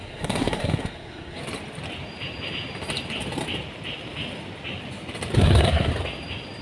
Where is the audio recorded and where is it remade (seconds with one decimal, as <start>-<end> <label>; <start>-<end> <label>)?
0.0-1.4 remade; 1.4-5.4 recorded; 5.4-5.9 remade; 5.9-6.6 recorded